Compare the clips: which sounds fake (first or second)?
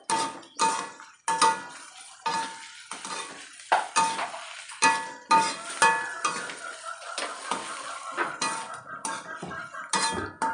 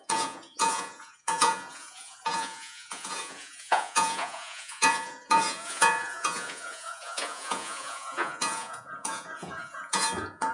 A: second